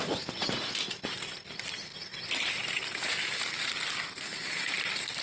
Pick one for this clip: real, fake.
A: fake